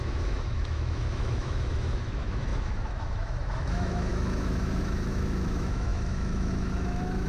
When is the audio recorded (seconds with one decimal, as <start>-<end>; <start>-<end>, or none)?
none